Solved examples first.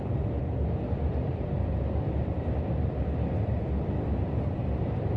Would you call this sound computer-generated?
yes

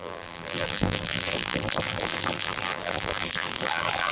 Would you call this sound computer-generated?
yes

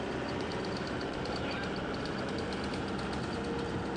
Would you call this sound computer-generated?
yes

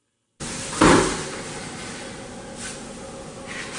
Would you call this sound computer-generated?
no